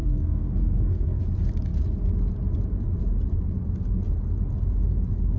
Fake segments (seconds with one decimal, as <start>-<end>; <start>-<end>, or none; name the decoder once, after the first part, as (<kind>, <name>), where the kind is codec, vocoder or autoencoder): 0.0-1.2 (codec, SNAC)

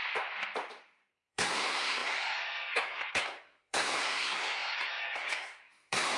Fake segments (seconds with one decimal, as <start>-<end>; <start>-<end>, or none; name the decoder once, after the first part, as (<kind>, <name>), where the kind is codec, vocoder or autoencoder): 1.1-6.2 (codec, SNAC)